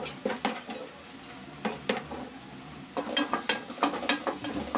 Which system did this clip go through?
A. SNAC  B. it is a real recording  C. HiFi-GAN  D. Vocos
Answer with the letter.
B